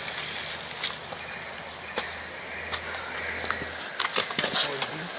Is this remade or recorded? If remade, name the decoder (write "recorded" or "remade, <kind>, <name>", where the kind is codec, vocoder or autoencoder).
recorded